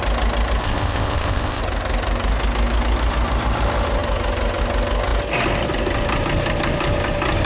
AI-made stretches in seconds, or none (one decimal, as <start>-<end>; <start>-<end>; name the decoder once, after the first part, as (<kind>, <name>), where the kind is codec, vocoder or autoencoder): 0.6-1.6 (codec, ZipCodec)